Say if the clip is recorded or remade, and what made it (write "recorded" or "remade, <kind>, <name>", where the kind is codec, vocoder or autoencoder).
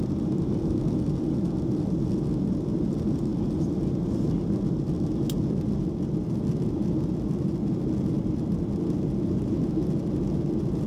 recorded